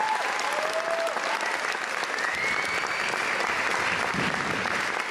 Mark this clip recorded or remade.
recorded